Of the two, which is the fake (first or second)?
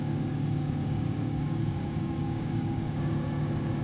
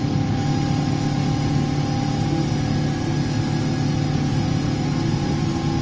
first